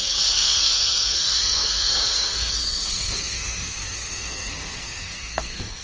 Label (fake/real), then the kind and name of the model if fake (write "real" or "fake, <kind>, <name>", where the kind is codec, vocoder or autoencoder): fake, codec, SNAC